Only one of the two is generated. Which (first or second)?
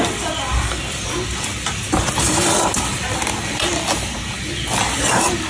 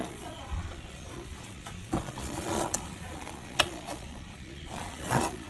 second